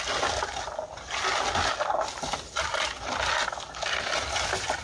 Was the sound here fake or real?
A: real